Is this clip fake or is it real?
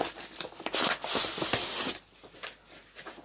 real